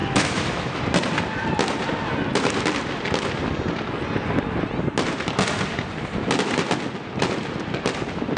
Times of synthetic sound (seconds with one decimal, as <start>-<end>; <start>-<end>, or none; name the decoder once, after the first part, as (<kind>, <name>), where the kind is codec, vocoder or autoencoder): 0.0-0.8 (autoencoder, DAC-VAE)